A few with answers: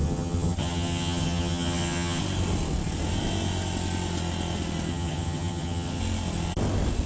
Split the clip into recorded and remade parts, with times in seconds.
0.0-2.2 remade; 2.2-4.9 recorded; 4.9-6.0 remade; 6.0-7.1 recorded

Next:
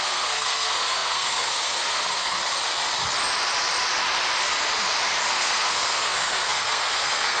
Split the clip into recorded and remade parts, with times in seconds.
0.0-2.4 remade; 2.4-5.3 recorded; 5.3-7.4 remade

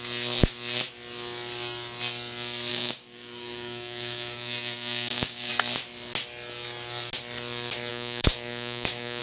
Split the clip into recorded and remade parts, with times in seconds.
0.0-2.7 recorded; 2.7-5.5 remade; 5.5-7.9 recorded; 7.9-9.2 remade

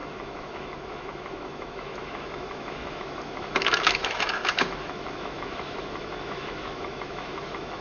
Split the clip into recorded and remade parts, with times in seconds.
0.0-7.8 remade

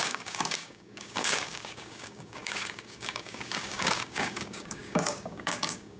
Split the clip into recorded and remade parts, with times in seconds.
0.0-6.0 remade

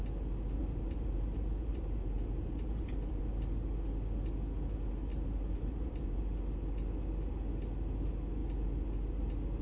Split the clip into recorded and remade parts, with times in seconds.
0.0-0.6 recorded; 0.6-3.2 remade; 3.2-5.1 recorded; 5.1-6.2 remade; 6.2-9.6 recorded

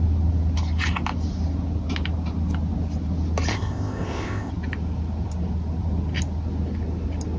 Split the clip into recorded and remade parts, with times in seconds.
0.0-3.5 recorded; 3.5-4.5 remade; 4.5-7.4 recorded